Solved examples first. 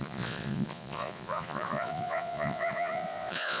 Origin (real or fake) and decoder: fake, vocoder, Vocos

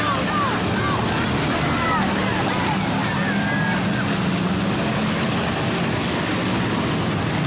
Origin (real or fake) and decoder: real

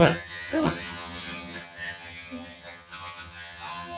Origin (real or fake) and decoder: fake, vocoder, HiFi-GAN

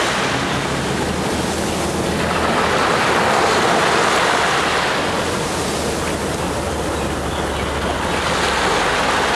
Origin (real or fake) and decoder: real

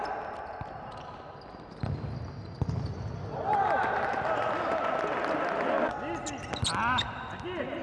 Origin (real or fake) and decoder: real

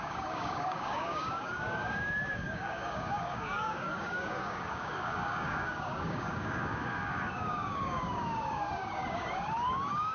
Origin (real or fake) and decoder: fake, codec, DAC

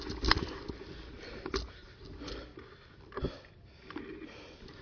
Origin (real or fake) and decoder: real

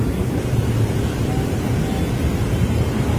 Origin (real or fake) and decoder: real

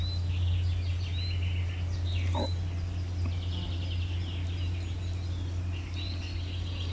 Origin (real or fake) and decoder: real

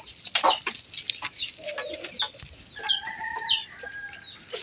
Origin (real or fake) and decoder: real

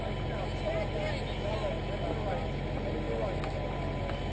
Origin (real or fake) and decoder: real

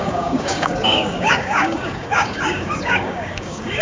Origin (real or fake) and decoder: fake, codec, DAC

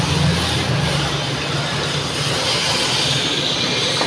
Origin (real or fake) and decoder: real